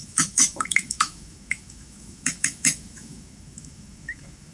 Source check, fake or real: fake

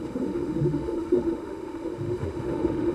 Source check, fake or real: fake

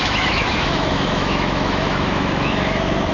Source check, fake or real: fake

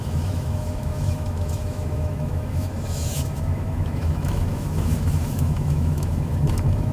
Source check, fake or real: fake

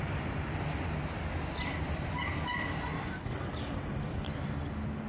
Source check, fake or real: real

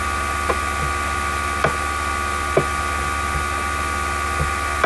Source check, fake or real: real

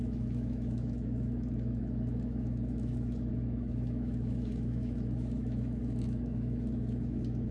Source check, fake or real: fake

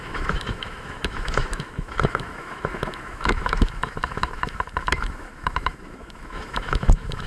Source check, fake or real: fake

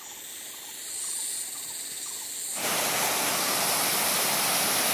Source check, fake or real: real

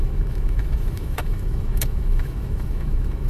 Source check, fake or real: fake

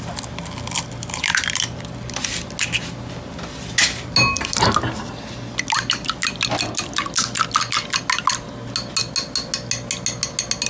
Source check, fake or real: real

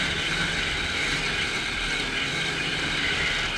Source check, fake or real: real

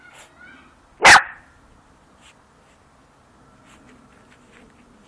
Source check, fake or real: real